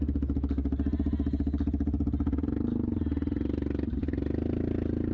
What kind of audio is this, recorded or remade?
recorded